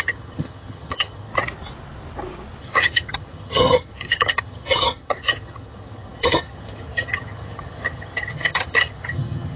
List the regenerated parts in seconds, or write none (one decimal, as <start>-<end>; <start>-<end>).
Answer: 0.0-1.3; 2.6-9.6